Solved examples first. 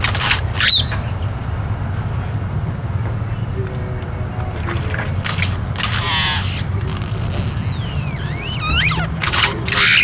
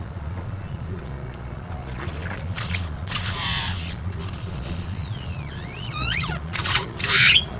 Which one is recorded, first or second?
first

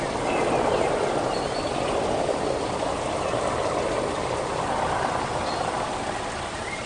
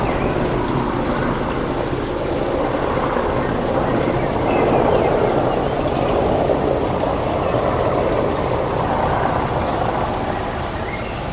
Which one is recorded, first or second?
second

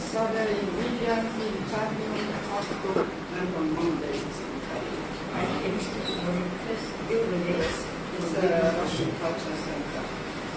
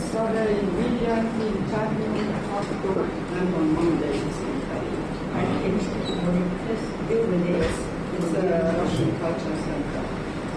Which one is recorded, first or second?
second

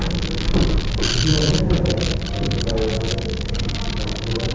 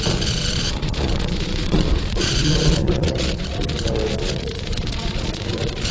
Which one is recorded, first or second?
first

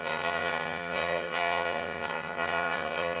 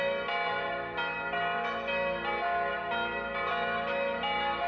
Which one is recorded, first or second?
second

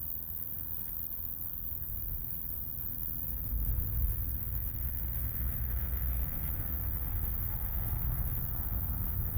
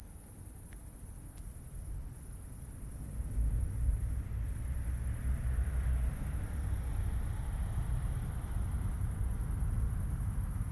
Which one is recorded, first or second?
second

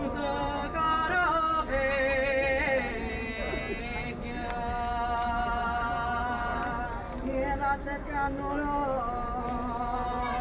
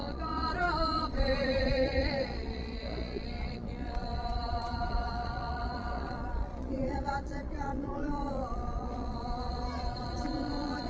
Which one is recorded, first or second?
first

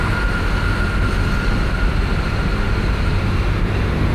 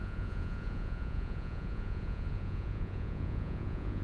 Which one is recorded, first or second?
first